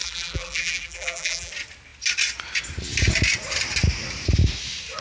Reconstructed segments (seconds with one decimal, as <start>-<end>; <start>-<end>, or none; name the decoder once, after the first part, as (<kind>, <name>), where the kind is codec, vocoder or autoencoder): 0.0-1.5 (vocoder, BigVGAN v2)